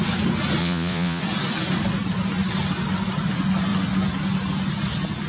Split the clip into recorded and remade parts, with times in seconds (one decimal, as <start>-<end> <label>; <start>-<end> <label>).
0.0-0.6 recorded; 0.6-1.2 remade; 1.2-5.3 recorded